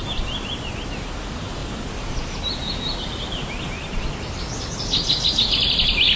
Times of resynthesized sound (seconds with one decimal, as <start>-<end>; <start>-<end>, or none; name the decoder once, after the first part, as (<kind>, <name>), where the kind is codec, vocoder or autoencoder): none